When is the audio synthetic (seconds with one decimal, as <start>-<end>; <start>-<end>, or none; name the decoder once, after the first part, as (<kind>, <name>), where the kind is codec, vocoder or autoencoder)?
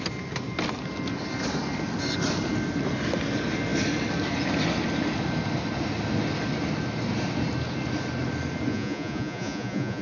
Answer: 8.7-10.0 (vocoder, Vocos)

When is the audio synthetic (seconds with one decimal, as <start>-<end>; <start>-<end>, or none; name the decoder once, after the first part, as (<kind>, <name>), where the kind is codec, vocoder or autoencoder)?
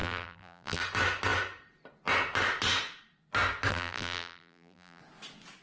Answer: 0.0-0.8 (vocoder, BigVGAN v2); 3.7-5.0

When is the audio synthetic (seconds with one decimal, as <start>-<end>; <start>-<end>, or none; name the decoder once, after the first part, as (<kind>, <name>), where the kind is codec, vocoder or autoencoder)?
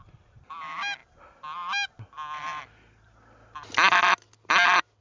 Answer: none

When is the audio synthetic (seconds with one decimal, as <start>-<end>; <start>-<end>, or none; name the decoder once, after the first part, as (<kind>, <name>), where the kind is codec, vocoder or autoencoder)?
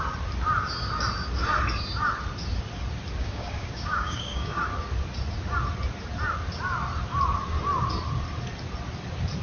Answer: 3.2-4.6 (codec, DAC)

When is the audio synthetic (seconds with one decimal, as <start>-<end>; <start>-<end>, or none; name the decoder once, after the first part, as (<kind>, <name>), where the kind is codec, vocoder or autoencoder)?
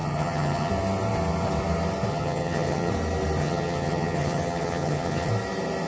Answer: 0.0-0.7 (vocoder, HiFi-GAN); 2.1-2.9; 3.4-5.3